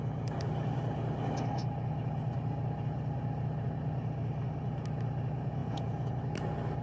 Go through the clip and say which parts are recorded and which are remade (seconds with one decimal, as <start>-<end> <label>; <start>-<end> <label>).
0.0-5.6 recorded; 5.6-6.1 remade; 6.1-6.8 recorded